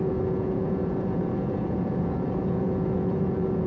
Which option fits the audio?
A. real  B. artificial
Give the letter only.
B